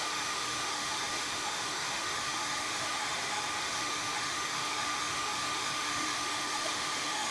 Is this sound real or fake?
fake